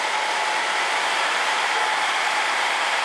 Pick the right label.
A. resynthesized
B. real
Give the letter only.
A